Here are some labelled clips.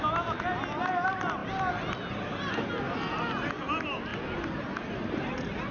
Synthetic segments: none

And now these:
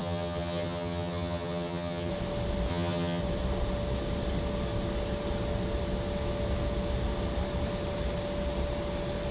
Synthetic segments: 0.0-2.1 (vocoder, HiFi-GAN); 2.7-3.2